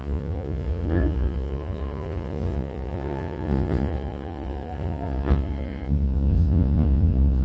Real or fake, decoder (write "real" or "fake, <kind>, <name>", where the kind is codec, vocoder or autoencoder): fake, vocoder, Vocos